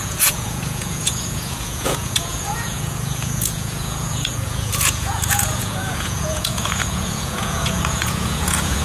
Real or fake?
fake